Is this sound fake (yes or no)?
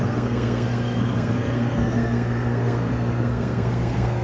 yes